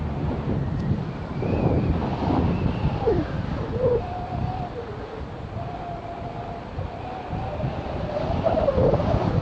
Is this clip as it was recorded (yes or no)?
yes